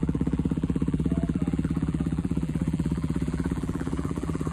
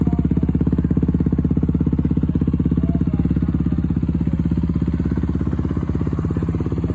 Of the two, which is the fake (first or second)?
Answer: first